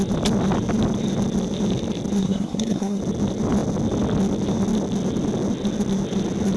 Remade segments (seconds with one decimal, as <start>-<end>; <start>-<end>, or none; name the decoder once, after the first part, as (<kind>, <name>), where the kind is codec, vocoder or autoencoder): 2.2-3.0 (codec, SNAC)